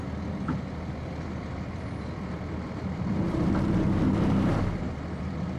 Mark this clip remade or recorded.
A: remade